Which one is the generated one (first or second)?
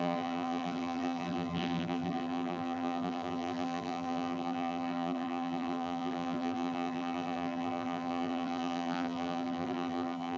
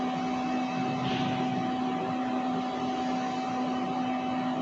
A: first